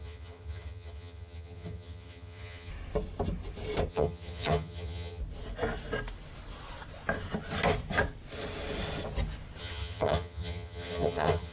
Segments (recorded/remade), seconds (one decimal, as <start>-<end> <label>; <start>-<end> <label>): 0.0-2.7 remade; 2.7-3.9 recorded; 3.9-5.2 remade; 5.2-9.6 recorded; 9.6-11.5 remade